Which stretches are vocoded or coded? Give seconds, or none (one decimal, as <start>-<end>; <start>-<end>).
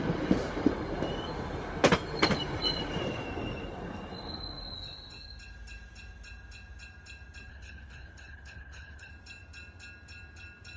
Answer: 7.5-9.1